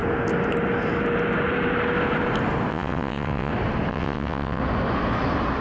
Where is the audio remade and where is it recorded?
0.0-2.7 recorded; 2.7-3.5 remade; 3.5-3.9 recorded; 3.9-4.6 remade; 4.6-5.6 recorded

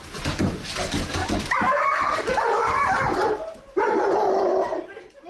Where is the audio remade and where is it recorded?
0.0-1.2 recorded; 1.2-4.4 remade; 4.4-5.3 recorded

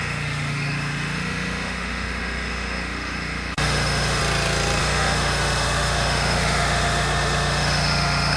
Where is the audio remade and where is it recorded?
0.0-4.2 remade; 4.2-4.8 recorded; 4.8-8.4 remade

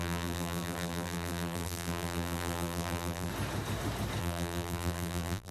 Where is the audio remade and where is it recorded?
0.0-3.3 remade; 3.3-4.2 recorded; 4.2-5.5 remade

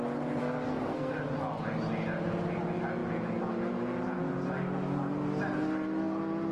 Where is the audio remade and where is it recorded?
0.0-0.4 recorded; 0.4-1.1 remade; 1.1-6.5 recorded

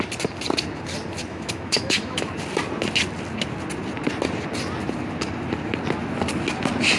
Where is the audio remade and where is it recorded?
0.0-1.3 recorded; 1.3-2.3 remade; 2.3-7.0 recorded

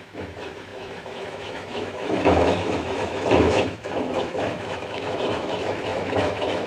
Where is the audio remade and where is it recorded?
0.0-6.7 remade